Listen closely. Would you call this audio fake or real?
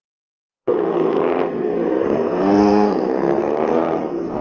fake